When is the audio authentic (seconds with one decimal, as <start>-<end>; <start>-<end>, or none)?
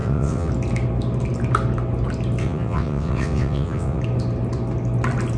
0.5-2.4; 4.0-5.4